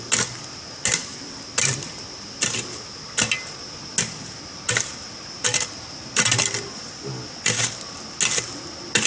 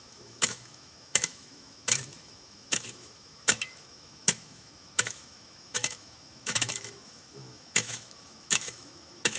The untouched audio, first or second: first